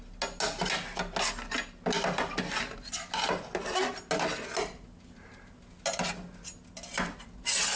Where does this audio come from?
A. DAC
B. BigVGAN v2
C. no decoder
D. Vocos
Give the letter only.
C